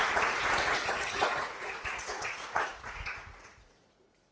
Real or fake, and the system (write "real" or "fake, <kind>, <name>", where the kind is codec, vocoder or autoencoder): fake, vocoder, Vocos